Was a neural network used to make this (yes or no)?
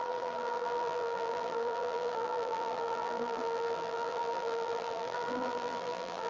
yes